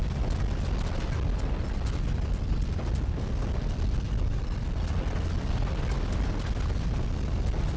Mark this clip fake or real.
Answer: real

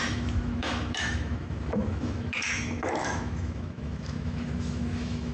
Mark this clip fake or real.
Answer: fake